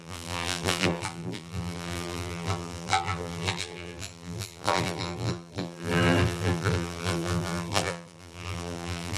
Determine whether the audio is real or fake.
fake